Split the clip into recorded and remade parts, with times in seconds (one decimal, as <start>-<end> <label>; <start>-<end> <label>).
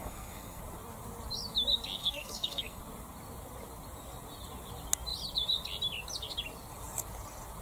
0.0-0.6 remade; 0.6-2.0 recorded; 2.0-2.8 remade; 2.8-7.6 recorded